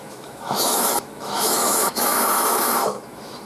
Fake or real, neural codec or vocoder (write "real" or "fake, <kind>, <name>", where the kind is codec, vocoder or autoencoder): fake, autoencoder, DAC-VAE